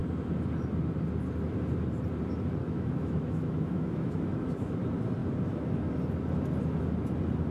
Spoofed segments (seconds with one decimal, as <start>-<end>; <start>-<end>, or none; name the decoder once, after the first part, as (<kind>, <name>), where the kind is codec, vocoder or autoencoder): 2.6-4.8 (autoencoder, DAC-VAE)